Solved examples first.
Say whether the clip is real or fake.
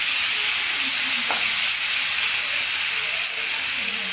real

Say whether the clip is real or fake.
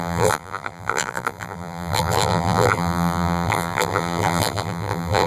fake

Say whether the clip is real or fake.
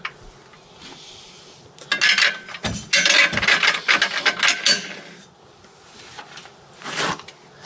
real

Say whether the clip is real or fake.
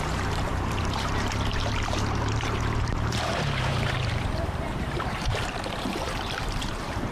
fake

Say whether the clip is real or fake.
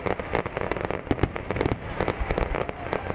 real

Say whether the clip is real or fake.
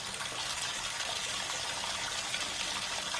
real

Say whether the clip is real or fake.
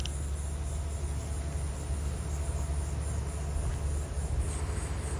real